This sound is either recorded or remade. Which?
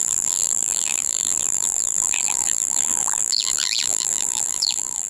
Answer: remade